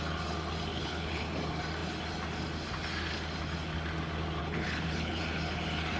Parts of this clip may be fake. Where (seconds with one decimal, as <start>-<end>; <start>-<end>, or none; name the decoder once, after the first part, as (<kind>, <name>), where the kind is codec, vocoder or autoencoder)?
0.7-1.2 (codec, HILCodec); 4.4-5.2